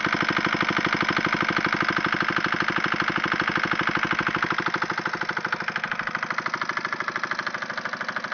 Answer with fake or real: real